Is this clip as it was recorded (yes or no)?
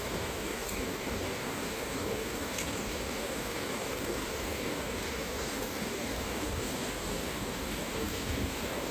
no